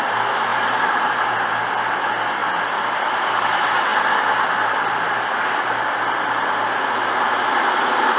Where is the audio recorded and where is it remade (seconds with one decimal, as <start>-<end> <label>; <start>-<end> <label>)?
0.0-0.5 recorded; 0.5-1.9 remade; 1.9-2.4 recorded; 2.4-3.4 remade; 3.4-3.9 recorded; 3.9-6.2 remade; 6.2-8.2 recorded